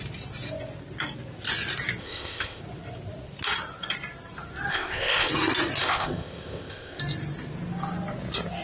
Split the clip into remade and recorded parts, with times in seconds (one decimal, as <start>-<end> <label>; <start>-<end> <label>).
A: 0.0-2.0 recorded; 2.0-2.6 remade; 2.6-4.7 recorded; 4.7-5.3 remade; 5.3-5.8 recorded; 5.8-7.0 remade; 7.0-8.6 recorded